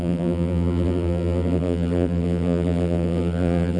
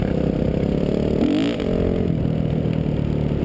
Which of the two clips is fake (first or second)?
first